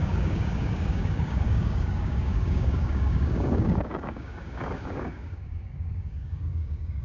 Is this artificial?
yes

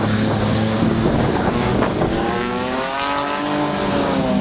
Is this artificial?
yes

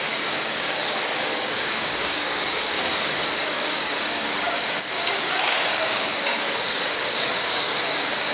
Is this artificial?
yes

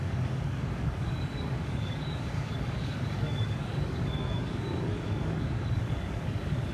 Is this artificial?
yes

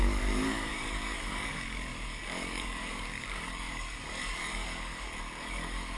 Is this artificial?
yes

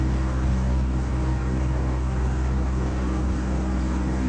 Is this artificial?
yes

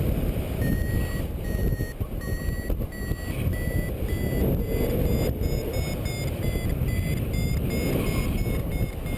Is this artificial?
no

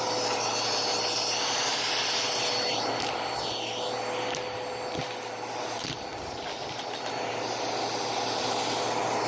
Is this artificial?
no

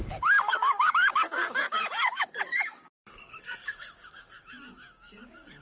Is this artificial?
yes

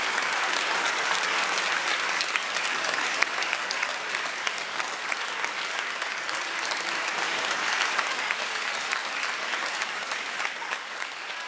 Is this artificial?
yes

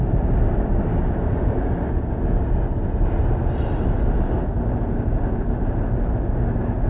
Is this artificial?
no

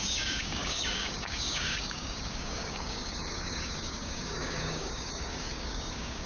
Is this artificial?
yes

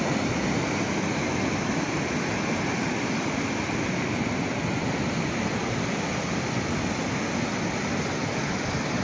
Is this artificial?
no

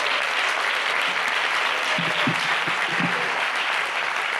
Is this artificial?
no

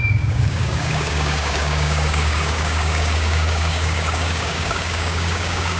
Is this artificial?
yes